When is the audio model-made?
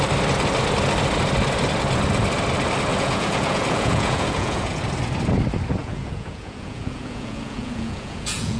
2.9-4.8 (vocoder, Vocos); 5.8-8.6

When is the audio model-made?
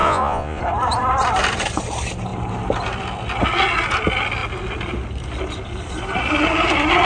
0.0-0.6 (vocoder, Vocos)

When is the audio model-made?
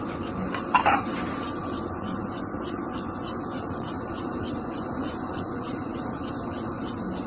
1.6-6.0 (vocoder, Vocos)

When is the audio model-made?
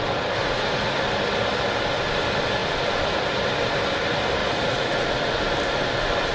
0.4-1.0 (vocoder, Vocos); 4.4-5.4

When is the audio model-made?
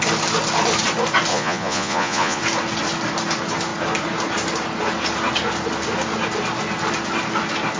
1.3-2.4 (vocoder, Vocos)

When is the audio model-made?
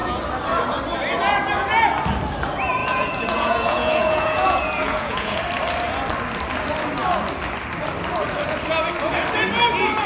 2.8-5.4 (vocoder, Vocos)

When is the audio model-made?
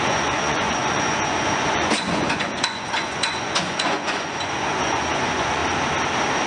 0.0-5.6 (vocoder, Vocos)